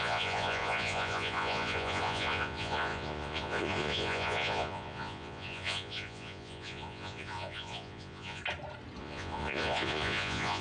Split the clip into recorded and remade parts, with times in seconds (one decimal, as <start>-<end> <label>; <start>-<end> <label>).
0.0-8.4 remade; 8.4-9.0 recorded; 9.0-10.6 remade